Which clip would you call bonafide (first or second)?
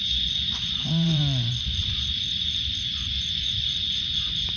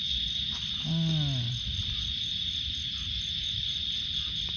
second